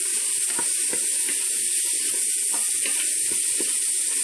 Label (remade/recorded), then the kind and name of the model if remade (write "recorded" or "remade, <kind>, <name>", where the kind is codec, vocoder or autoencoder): recorded